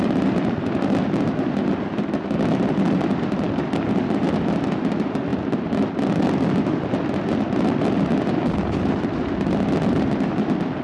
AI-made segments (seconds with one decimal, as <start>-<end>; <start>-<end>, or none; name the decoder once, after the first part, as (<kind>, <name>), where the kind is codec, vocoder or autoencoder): none